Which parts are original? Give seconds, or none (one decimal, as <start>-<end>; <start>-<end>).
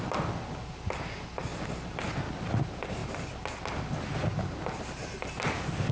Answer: 0.0-5.9